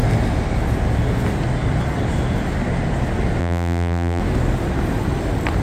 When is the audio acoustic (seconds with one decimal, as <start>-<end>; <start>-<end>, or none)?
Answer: 0.0-3.4; 4.2-5.6